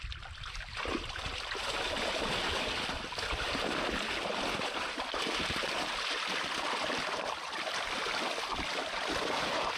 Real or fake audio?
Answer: real